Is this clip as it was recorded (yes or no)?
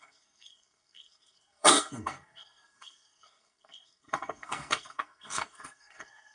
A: no